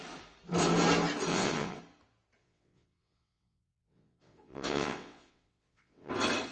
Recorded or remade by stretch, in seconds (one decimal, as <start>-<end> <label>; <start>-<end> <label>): 0.0-1.3 recorded; 1.3-1.8 remade; 1.8-2.4 recorded; 2.4-6.1 remade; 6.1-6.5 recorded